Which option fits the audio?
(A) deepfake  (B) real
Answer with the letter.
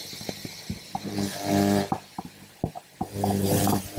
A